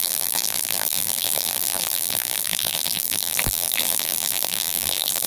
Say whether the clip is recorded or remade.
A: remade